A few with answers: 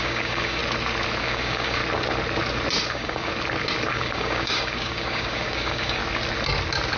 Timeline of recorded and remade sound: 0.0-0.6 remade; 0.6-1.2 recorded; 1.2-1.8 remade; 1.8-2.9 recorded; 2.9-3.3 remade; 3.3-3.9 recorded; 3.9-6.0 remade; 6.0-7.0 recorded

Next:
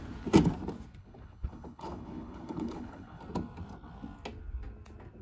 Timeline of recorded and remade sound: 0.0-1.0 recorded; 1.0-3.2 remade; 3.2-5.2 recorded

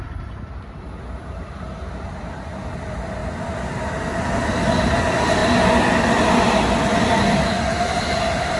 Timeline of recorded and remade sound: 0.0-8.6 recorded

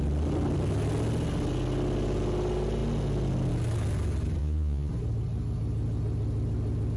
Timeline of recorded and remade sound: 0.0-4.4 recorded; 4.4-4.9 remade; 4.9-7.0 recorded

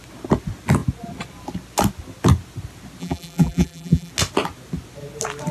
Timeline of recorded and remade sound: 0.0-3.0 recorded; 3.0-4.1 remade; 4.1-5.5 recorded

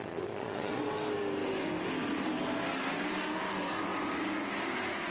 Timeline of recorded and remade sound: 0.0-0.9 remade; 0.9-5.1 recorded

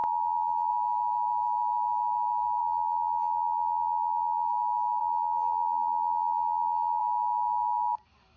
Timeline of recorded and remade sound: 0.0-0.7 remade; 0.7-2.6 recorded; 2.6-4.5 remade; 4.5-5.0 recorded; 5.0-7.0 remade; 7.0-8.4 recorded

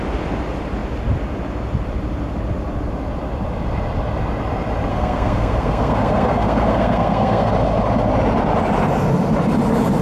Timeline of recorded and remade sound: 0.0-4.9 recorded; 4.9-7.5 remade; 7.5-10.0 recorded